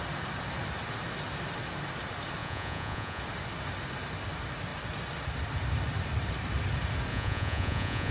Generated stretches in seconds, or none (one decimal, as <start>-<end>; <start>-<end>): 2.4-3.2; 7.1-8.1